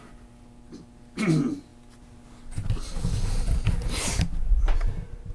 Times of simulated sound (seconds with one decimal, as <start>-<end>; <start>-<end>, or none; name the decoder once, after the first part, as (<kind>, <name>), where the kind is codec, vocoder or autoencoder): none